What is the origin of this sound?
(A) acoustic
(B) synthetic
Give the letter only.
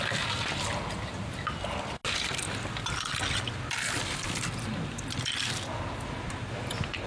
A